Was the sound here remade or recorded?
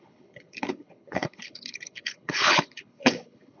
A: remade